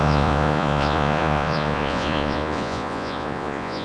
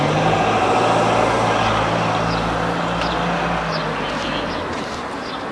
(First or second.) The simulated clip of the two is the first